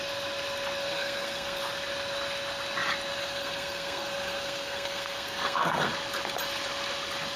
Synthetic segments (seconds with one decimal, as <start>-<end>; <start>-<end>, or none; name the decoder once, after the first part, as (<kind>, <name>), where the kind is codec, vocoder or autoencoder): 0.9-1.6 (codec, SNAC); 3.2-5.9